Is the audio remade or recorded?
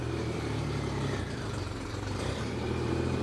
remade